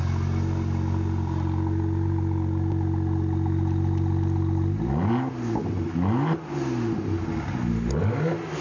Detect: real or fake real